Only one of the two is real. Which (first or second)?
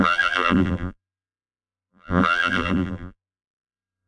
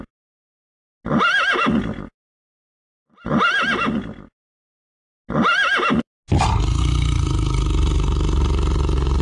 second